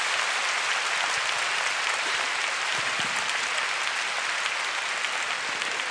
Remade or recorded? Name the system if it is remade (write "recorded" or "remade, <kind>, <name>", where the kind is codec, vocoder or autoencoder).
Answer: recorded